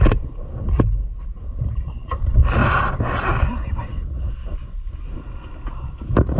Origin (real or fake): real